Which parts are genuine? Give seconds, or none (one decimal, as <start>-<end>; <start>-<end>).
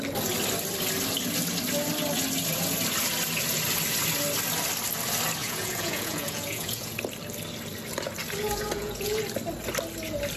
0.0-5.4; 7.0-8.4; 9.2-10.4